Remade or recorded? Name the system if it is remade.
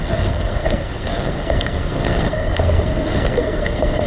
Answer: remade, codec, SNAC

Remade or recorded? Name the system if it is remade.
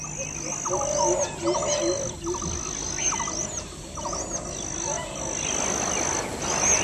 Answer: recorded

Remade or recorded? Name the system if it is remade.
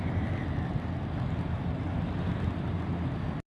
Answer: recorded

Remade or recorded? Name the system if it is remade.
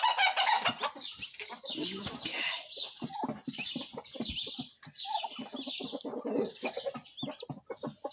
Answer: recorded